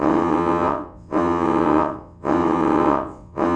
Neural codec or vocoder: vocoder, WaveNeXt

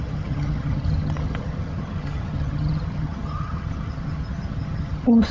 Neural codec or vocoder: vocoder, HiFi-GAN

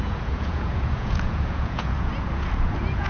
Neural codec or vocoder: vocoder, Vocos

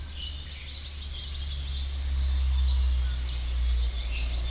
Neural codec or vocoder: none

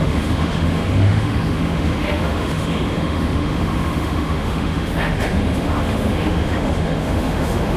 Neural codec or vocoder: autoencoder, DAC-VAE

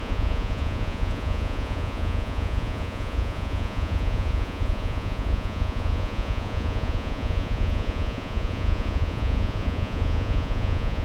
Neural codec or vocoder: vocoder, Vocos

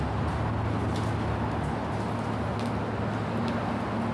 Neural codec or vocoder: none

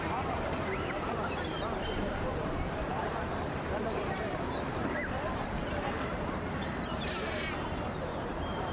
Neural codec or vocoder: vocoder, BigVGAN v2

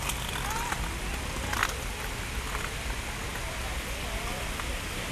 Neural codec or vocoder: none